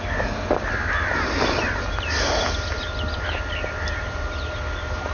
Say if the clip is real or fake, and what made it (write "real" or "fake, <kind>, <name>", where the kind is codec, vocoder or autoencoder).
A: real